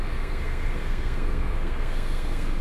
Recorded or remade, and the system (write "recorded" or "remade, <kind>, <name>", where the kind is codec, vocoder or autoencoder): remade, codec, SNAC